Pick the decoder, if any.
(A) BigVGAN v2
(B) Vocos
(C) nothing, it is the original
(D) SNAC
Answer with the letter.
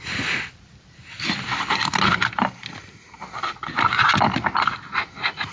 C